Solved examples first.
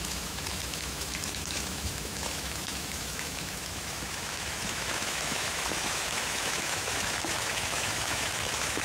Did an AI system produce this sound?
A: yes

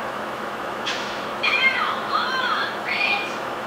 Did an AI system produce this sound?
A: yes